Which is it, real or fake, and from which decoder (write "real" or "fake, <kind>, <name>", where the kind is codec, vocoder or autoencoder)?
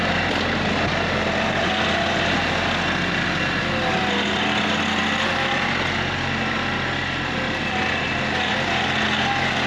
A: real